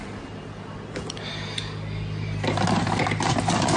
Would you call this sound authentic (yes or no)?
yes